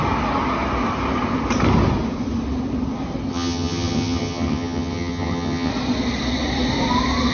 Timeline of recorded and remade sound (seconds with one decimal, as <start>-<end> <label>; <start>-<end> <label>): 0.0-3.3 recorded; 3.3-5.7 remade; 5.7-7.3 recorded